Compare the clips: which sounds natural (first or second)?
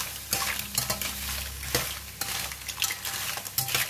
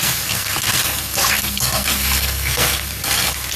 first